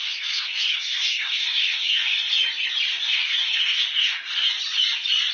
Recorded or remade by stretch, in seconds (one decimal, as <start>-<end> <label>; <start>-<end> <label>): 0.0-2.3 remade; 2.3-2.9 recorded; 2.9-4.5 remade; 4.5-5.3 recorded